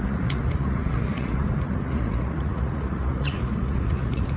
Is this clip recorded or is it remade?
remade